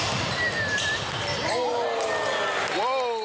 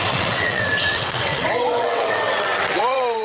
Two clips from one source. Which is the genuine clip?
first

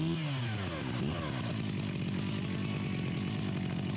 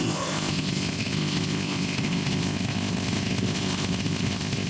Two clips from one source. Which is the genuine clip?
first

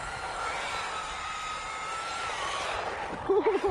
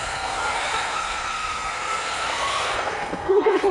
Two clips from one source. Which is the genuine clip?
first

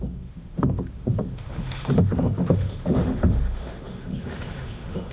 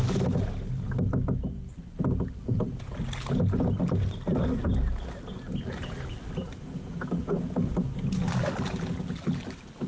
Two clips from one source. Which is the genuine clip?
second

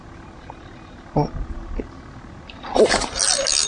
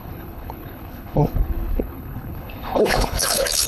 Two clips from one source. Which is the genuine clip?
first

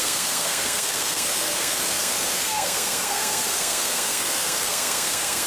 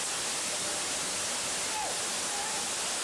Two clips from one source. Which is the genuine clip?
second